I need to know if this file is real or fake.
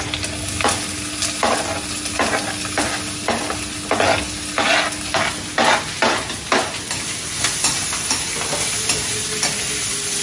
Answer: real